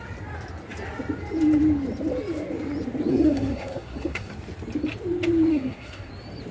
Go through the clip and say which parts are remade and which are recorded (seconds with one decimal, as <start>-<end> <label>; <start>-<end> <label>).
0.0-3.1 recorded; 3.1-4.3 remade; 4.3-5.5 recorded; 5.5-6.1 remade; 6.1-6.5 recorded